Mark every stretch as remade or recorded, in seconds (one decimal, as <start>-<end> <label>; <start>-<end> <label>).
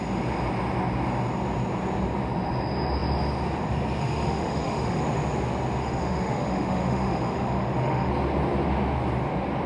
0.0-4.0 recorded; 4.0-5.0 remade; 5.0-5.8 recorded; 5.8-8.1 remade; 8.1-9.7 recorded